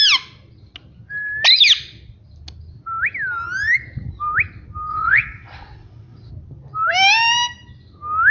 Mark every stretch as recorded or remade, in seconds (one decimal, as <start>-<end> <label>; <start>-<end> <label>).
0.0-4.9 recorded; 4.9-6.3 remade; 6.3-8.3 recorded